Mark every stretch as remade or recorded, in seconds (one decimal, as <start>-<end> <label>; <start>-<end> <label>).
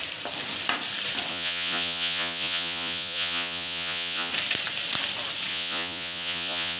0.0-1.3 recorded; 1.3-4.3 remade; 4.3-5.5 recorded; 5.5-6.8 remade